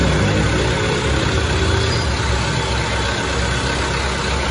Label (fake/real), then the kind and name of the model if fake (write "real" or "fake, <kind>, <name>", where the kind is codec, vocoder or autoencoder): real